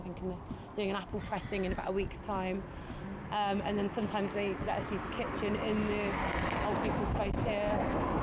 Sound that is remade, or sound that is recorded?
recorded